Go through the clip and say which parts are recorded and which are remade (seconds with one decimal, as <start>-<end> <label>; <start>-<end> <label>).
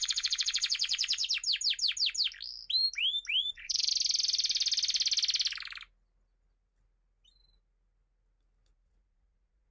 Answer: 0.0-1.2 remade; 1.2-3.5 recorded; 3.5-3.9 remade; 3.9-8.7 recorded; 8.7-9.7 remade